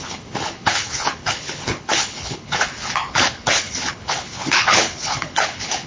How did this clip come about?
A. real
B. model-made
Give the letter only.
B